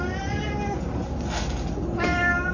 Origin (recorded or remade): recorded